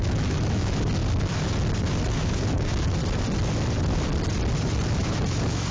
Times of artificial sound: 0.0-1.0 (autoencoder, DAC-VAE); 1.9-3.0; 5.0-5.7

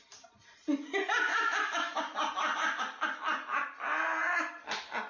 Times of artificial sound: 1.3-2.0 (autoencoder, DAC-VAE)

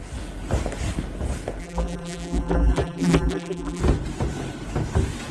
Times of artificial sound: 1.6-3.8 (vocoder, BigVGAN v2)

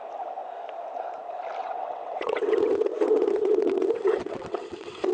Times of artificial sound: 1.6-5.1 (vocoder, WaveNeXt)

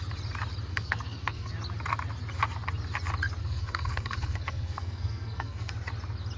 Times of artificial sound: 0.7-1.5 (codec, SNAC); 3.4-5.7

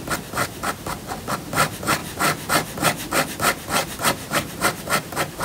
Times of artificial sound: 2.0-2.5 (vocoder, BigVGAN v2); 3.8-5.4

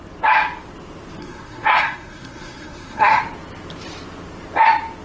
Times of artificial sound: 1.2-3.2 (codec, SNAC)